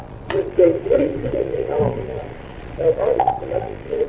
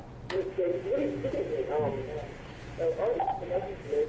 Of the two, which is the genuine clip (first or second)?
second